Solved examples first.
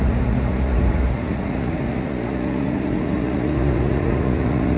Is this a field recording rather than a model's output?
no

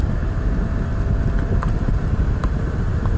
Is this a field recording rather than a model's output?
yes